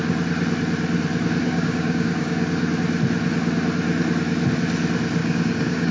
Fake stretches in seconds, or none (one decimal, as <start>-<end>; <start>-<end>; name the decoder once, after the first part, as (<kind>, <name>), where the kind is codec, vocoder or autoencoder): 1.4-2.6 (codec, DAC); 5.2-5.9